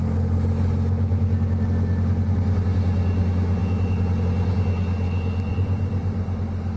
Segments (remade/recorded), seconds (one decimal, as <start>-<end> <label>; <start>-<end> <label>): 0.0-6.8 recorded